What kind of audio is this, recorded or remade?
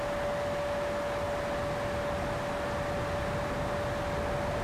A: recorded